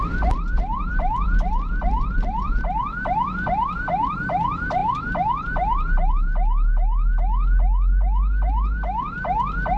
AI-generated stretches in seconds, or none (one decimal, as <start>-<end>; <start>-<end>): none